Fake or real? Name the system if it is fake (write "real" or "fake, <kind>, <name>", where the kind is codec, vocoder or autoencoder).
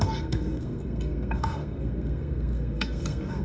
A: fake, codec, SNAC